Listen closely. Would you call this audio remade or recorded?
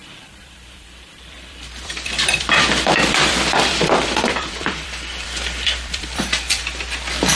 remade